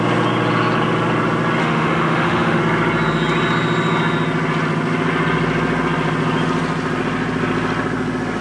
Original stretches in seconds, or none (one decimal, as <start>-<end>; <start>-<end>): 0.0-1.6; 2.6-8.4